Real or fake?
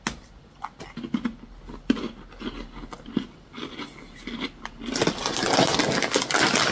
real